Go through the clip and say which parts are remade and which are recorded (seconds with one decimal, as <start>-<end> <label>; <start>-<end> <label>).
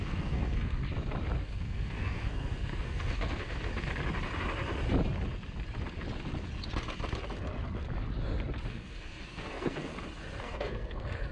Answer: 0.0-0.8 remade; 0.8-1.4 recorded; 1.4-3.7 remade; 3.7-8.7 recorded; 8.7-9.9 remade; 9.9-10.4 recorded; 10.4-11.3 remade